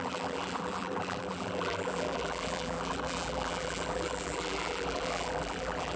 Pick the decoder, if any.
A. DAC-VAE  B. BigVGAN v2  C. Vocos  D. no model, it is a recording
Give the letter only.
B